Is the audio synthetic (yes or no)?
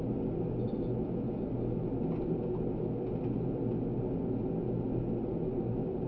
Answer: no